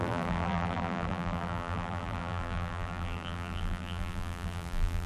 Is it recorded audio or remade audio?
remade